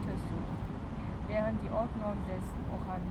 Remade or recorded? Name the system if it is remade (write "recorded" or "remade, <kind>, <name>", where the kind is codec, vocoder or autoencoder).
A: recorded